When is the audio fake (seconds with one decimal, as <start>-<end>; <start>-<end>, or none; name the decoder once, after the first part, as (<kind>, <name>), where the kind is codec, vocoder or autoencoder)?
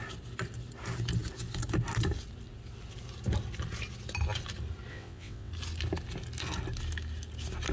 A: 4.9-5.5 (vocoder, WaveNeXt)